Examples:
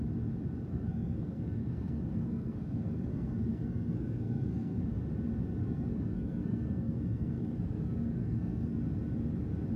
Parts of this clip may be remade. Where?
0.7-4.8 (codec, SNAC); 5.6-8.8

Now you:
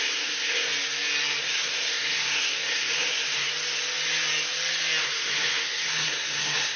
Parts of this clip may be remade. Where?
0.0-0.7 (codec, SNAC); 1.4-3.5; 5.0-6.8

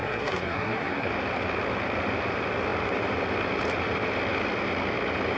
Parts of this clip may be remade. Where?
0.0-1.1 (codec, SNAC)

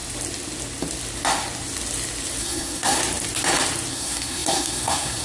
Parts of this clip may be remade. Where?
2.4-3.0 (codec, SNAC); 3.9-5.2